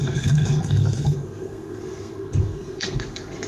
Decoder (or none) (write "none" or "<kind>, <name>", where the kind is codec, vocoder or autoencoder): codec, SNAC